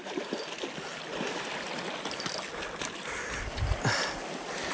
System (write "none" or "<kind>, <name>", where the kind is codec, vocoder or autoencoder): none